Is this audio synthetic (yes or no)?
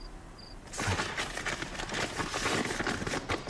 no